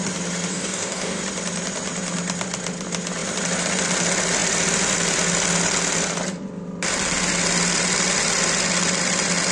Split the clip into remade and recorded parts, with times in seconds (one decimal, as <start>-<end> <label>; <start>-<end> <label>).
0.0-0.5 recorded; 0.5-1.2 remade; 1.2-9.5 recorded

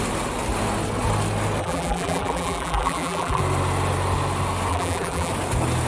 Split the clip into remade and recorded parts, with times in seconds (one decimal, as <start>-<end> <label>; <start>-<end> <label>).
0.0-1.6 recorded; 1.6-3.4 remade; 3.4-4.7 recorded; 4.7-5.3 remade; 5.3-5.9 recorded

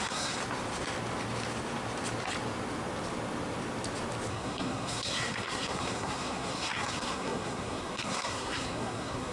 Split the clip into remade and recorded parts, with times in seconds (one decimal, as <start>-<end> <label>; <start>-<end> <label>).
0.0-0.4 remade; 0.4-4.3 recorded; 4.3-9.3 remade

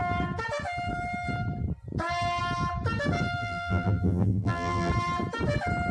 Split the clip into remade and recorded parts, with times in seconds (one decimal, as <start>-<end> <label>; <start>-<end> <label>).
0.0-3.4 recorded; 3.4-4.9 remade; 4.9-5.9 recorded

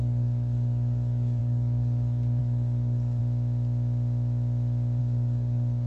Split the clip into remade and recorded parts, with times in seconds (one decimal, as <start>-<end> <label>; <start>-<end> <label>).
0.0-3.2 remade; 3.2-5.0 recorded; 5.0-5.9 remade

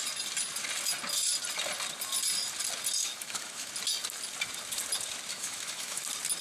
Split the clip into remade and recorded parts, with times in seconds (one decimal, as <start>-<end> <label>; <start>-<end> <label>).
0.0-3.0 recorded; 3.0-3.7 remade; 3.7-5.3 recorded; 5.3-6.0 remade; 6.0-6.4 recorded